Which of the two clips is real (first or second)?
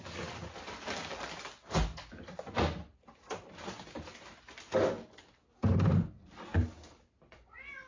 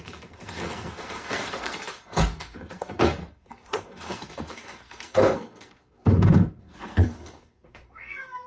first